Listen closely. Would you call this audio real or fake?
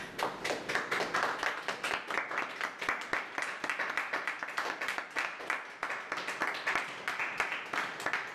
real